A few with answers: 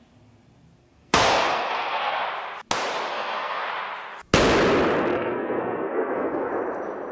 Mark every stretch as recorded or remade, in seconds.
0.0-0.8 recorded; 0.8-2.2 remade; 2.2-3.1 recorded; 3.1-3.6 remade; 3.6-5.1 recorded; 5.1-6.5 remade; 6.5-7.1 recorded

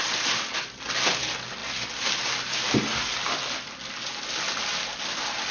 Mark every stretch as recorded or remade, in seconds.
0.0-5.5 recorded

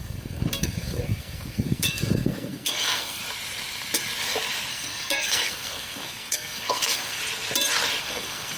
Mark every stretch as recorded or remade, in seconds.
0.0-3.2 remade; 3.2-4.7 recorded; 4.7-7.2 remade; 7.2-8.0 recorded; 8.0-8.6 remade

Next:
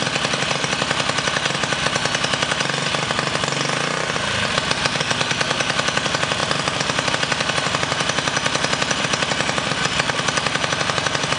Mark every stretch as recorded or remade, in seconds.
0.0-11.4 recorded

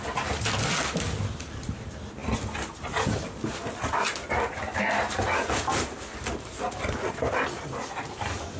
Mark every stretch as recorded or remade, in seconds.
0.0-8.6 recorded

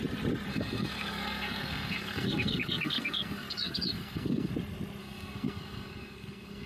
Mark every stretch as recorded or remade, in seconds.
0.0-0.5 recorded; 0.5-4.5 remade; 4.5-5.0 recorded; 5.0-6.7 remade

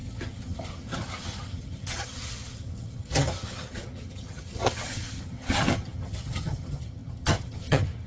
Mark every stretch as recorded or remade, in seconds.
0.0-8.1 remade

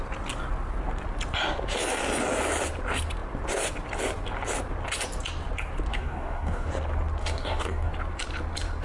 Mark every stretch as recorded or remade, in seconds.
0.0-5.9 recorded; 5.9-6.7 remade; 6.7-7.2 recorded; 7.2-7.9 remade; 7.9-8.8 recorded